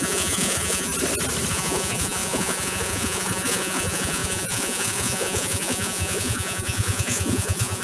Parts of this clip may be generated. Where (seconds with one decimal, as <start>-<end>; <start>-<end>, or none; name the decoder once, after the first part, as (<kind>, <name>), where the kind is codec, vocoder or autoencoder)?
0.0-0.9 (vocoder, Vocos); 1.5-7.8